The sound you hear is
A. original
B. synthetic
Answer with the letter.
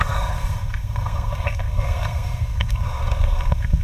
B